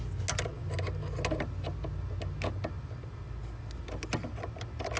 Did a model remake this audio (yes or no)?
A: no